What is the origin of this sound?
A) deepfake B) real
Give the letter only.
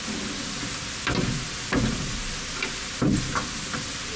B